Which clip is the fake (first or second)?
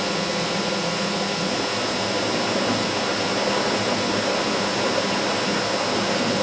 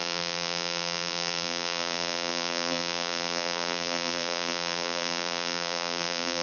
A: second